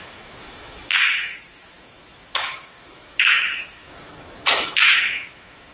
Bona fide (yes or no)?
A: no